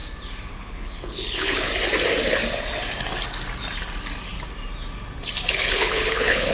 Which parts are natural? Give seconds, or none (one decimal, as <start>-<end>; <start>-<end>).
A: 0.0-0.5; 1.7-5.5